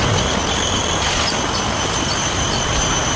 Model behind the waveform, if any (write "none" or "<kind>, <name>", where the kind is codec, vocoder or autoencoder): none